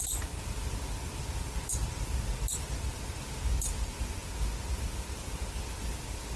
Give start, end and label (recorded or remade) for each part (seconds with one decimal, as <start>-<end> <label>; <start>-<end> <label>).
0.0-6.4 recorded